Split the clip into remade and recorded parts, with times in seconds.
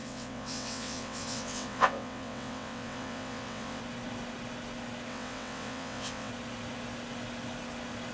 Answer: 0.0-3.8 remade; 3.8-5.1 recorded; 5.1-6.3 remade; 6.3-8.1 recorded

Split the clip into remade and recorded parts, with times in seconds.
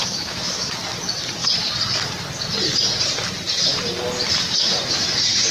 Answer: 0.0-0.8 remade; 0.8-5.5 recorded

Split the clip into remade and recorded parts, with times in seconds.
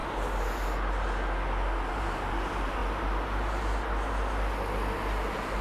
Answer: 0.0-1.9 recorded; 1.9-2.8 remade; 2.8-5.6 recorded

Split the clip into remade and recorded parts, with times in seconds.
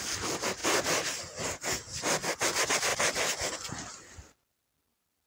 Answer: 0.0-0.6 recorded; 0.6-2.0 remade; 2.0-2.9 recorded; 2.9-5.3 remade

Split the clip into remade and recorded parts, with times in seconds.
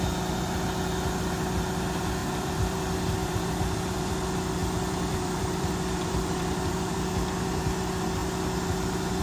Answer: 0.0-2.2 recorded; 2.2-2.8 remade; 2.8-3.2 recorded; 3.2-4.1 remade; 4.1-4.6 recorded; 4.6-7.6 remade; 7.6-9.2 recorded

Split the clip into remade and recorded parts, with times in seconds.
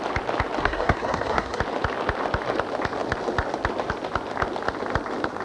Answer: 0.0-0.6 recorded; 0.6-1.6 remade; 1.6-5.4 recorded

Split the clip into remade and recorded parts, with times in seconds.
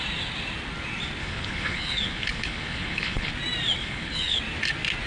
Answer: 0.0-1.2 recorded; 1.2-3.3 remade; 3.3-3.8 recorded; 3.8-4.4 remade; 4.4-5.1 recorded